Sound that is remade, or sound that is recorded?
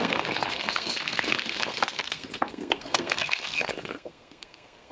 remade